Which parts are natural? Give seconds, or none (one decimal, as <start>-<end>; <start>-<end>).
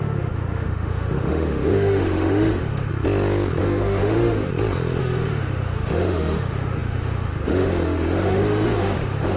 2.9-3.6; 4.5-5.0